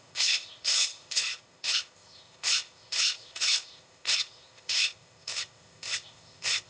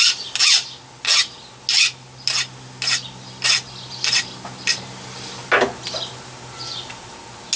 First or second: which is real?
second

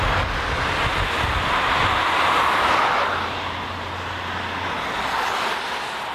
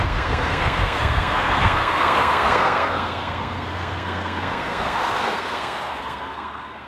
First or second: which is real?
first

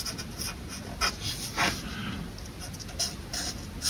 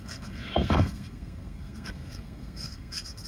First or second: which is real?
first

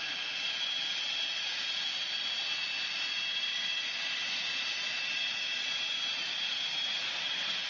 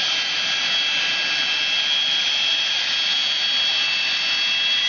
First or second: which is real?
second